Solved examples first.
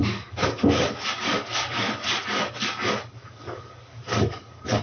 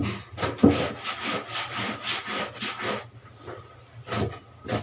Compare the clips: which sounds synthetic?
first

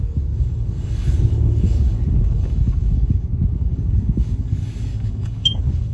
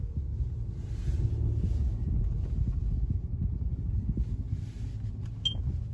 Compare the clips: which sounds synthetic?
first